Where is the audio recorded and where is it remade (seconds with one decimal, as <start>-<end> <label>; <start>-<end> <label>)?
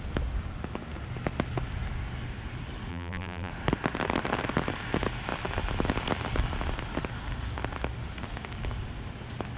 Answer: 0.0-2.9 recorded; 2.9-3.5 remade; 3.5-9.6 recorded